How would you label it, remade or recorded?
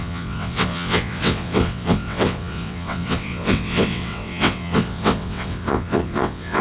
remade